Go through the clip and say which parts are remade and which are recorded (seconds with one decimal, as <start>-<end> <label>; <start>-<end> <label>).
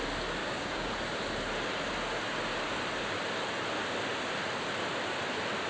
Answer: 0.0-0.4 recorded; 0.4-0.9 remade; 0.9-5.7 recorded